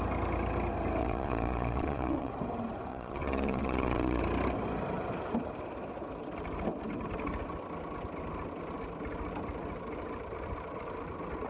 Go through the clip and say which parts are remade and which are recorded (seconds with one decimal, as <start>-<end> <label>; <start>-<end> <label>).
0.0-1.0 recorded; 1.0-2.3 remade; 2.3-2.9 recorded; 2.9-4.2 remade; 4.2-11.5 recorded